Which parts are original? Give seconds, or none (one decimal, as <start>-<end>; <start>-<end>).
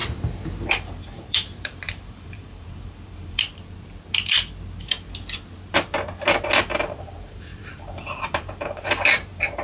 0.0-0.7; 3.5-6.6